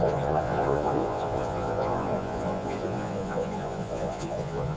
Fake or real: fake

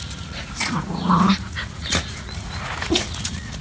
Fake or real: fake